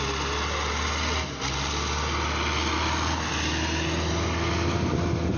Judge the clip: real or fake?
real